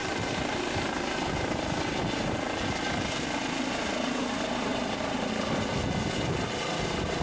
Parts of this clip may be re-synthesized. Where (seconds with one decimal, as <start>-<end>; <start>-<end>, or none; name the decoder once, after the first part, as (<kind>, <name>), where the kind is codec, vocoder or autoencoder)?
4.7-5.3 (vocoder, BigVGAN v2)